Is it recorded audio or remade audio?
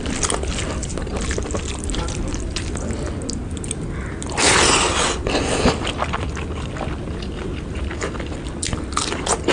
recorded